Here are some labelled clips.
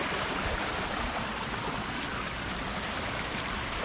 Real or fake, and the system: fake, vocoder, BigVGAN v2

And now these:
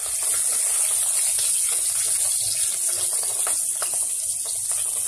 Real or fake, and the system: real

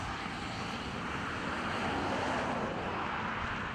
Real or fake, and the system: real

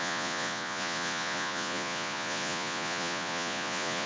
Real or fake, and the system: fake, vocoder, Vocos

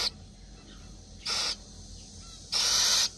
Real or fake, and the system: real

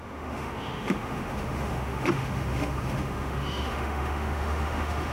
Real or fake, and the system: fake, autoencoder, DAC-VAE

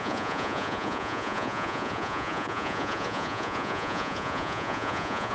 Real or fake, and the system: fake, vocoder, Vocos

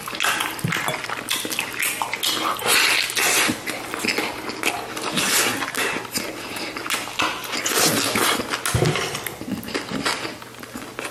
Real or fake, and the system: real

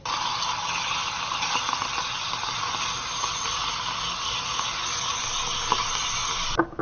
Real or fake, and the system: real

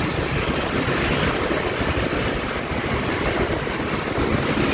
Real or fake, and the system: real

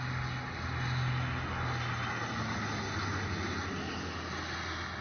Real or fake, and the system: real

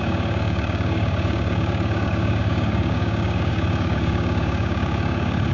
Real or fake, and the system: fake, codec, DAC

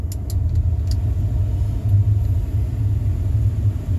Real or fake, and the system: real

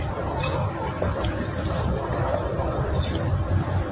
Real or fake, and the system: fake, vocoder, BigVGAN v2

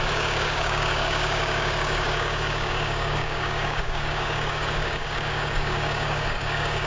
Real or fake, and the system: fake, codec, DAC